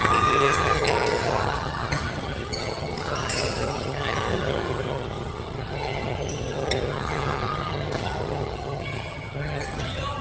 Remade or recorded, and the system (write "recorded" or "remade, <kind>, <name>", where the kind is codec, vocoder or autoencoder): remade, vocoder, HiFi-GAN